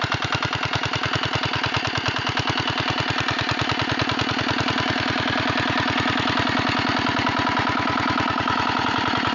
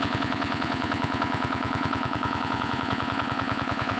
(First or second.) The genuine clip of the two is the first